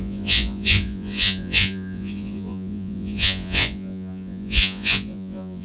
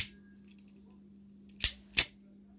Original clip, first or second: second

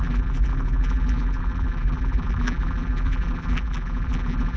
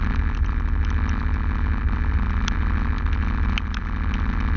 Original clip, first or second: second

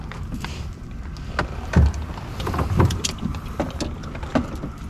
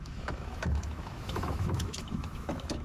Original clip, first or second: first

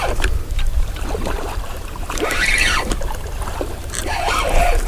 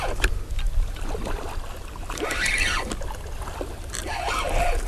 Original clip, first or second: second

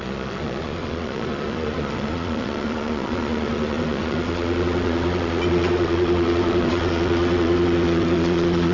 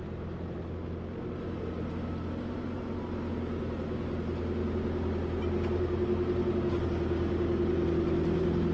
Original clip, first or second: second